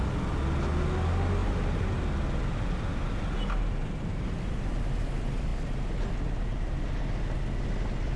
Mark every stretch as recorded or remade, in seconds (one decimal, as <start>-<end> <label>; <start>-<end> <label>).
0.0-1.4 recorded; 1.4-2.0 remade; 2.0-3.8 recorded; 3.8-4.8 remade; 4.8-8.2 recorded